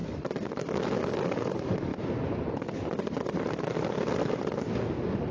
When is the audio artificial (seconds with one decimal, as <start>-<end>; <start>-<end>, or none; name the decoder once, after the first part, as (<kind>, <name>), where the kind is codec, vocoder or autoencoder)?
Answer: 0.0-1.9 (codec, DAC)

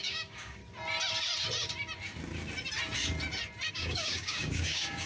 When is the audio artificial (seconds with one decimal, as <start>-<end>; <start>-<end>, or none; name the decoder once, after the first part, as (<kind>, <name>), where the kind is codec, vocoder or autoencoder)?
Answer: 0.0-0.6 (codec, DAC); 3.7-5.1

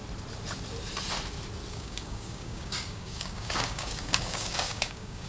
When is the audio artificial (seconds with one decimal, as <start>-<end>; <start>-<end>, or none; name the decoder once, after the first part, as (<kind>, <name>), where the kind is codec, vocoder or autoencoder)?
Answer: 1.7-5.3 (codec, DAC)

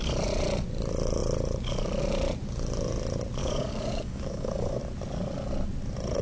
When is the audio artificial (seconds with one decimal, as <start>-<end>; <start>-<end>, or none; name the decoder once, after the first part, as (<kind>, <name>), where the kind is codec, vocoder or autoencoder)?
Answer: 3.4-4.8 (codec, DAC)

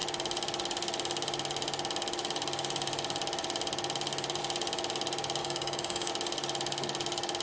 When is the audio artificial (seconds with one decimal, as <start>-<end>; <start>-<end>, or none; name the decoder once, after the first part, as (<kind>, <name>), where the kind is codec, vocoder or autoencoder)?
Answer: 5.4-6.1 (codec, DAC)

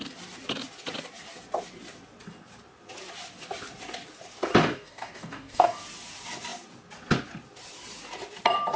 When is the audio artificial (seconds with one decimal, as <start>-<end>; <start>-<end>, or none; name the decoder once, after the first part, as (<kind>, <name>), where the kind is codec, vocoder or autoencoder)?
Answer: 4.6-5.8 (codec, DAC)

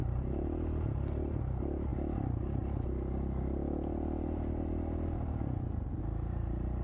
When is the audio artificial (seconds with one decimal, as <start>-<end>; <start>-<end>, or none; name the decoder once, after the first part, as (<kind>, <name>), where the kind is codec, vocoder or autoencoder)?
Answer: none

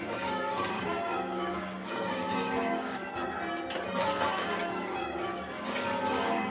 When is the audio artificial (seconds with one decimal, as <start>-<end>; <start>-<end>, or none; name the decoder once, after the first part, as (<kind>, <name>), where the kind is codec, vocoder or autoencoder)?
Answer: 0.0-3.1 (codec, DAC); 4.1-6.5